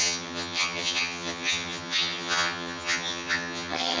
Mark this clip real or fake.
fake